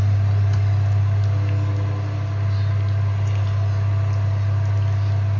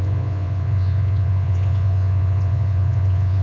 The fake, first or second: second